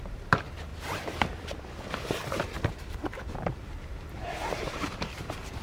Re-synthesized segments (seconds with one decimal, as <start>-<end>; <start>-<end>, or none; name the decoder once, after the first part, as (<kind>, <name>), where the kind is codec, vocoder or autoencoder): 0.0-0.7 (vocoder, BigVGAN v2); 1.4-5.6